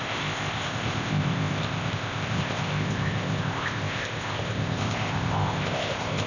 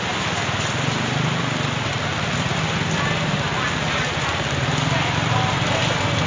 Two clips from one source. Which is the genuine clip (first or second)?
second